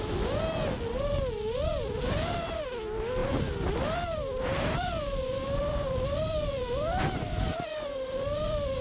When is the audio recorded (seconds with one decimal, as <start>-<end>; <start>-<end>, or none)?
0.0-3.2; 8.4-8.8